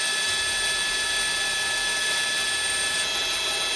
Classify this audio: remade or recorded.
recorded